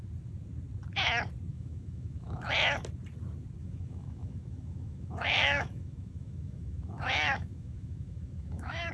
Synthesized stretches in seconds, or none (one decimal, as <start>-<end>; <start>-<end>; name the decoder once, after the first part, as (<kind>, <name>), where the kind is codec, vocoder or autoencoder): 1.5-2.5 (autoencoder, DAC-VAE); 3.6-8.9